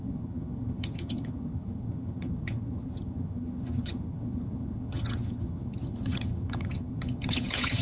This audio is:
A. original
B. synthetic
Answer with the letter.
B